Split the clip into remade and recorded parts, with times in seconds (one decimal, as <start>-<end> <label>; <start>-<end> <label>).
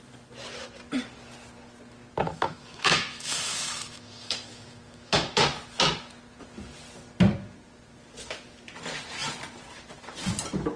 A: 0.0-2.2 recorded; 2.2-5.4 remade; 5.4-10.8 recorded